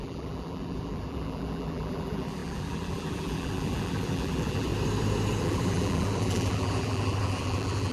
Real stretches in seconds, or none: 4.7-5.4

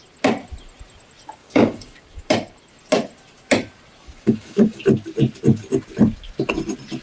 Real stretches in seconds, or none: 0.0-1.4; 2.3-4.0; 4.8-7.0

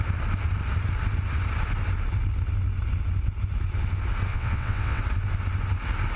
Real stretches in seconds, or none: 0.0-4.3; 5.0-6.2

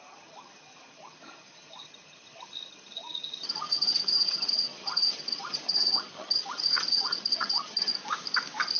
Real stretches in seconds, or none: 7.9-8.8

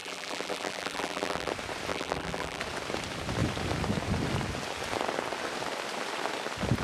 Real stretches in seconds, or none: 1.5-1.9; 2.6-6.8